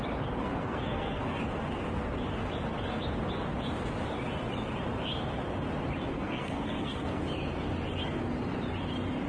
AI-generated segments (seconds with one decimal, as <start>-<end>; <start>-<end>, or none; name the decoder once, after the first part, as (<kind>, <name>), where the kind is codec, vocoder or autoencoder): 0.4-1.4 (codec, SNAC); 6.1-7.2